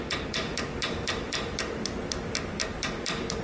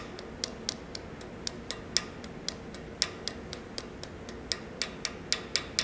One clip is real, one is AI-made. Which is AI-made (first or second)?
first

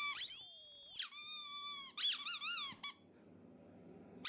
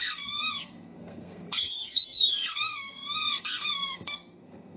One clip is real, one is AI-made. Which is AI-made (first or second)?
second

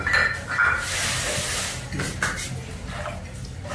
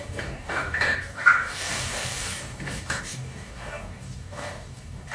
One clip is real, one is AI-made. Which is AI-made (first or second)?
second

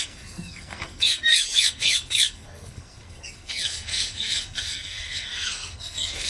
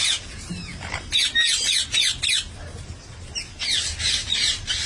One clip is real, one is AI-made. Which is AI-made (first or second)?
first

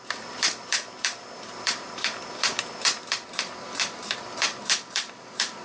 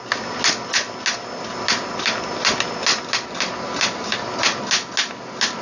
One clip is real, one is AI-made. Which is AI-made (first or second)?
first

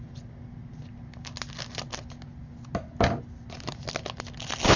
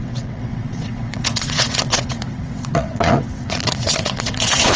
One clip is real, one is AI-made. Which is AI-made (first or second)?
second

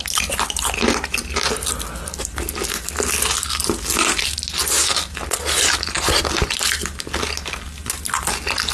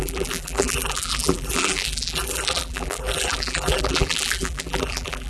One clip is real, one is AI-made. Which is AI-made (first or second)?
second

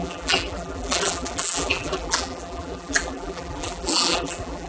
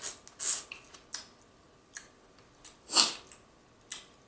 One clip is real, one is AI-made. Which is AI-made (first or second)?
first